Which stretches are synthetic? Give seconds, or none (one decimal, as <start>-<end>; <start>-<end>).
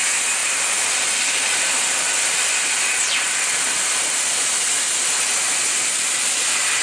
0.4-4.5